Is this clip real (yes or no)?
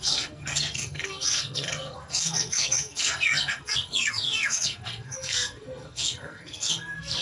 no